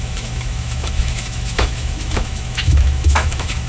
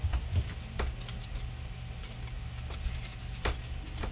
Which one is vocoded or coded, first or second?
first